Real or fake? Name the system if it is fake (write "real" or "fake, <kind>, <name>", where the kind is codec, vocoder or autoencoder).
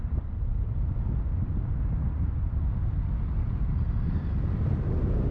real